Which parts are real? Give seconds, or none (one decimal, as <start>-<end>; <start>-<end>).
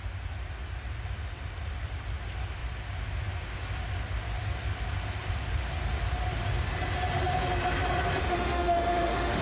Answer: 0.0-8.2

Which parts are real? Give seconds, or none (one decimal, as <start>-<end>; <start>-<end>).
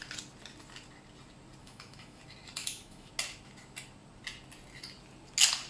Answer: 0.0-1.6; 2.2-2.6; 3.1-5.7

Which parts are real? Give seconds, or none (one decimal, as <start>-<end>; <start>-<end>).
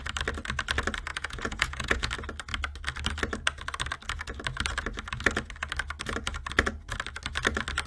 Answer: 0.0-1.1; 2.1-7.9